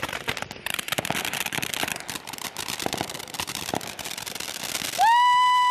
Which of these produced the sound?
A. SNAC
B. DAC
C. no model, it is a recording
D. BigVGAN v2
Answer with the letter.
C